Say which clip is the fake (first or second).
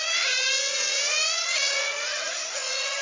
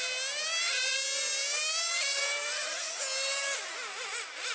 first